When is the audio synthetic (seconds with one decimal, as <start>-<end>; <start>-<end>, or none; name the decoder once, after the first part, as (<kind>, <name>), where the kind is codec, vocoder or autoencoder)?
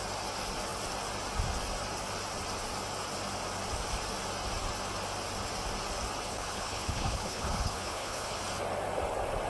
6.3-8.4 (codec, HILCodec)